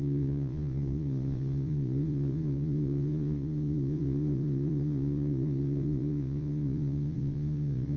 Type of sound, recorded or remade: remade